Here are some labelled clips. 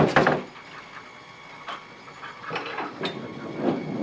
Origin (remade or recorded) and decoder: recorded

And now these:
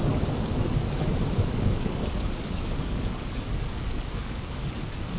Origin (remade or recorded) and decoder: remade, codec, DAC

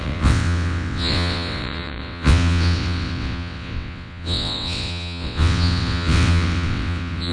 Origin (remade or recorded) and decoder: remade, vocoder, WaveNeXt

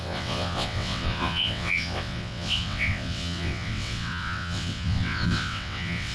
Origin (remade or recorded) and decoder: remade, vocoder, WaveNeXt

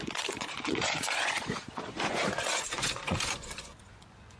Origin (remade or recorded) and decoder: remade, vocoder, Vocos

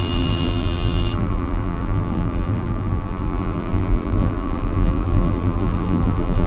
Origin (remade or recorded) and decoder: remade, vocoder, BigVGAN v2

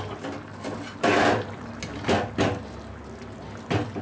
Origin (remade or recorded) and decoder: recorded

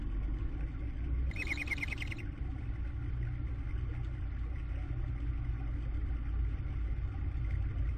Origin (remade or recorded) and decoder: recorded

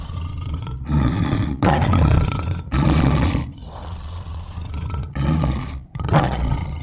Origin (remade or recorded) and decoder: remade, vocoder, Vocos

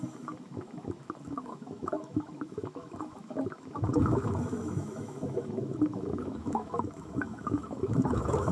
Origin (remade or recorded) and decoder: remade, autoencoder, DAC-VAE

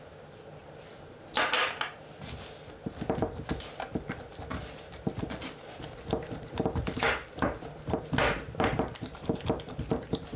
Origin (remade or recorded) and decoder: recorded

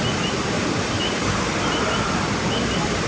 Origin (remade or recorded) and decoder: remade, vocoder, BigVGAN v2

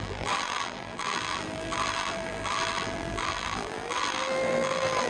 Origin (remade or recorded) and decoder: remade, vocoder, BigVGAN v2